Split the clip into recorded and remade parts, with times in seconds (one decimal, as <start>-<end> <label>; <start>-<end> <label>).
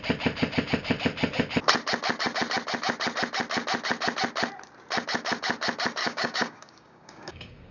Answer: 0.0-6.0 recorded; 6.0-7.7 remade